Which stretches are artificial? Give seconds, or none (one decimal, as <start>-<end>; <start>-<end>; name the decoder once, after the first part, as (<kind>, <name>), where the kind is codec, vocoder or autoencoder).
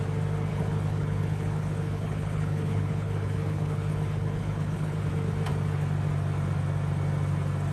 0.5-5.1 (codec, HILCodec)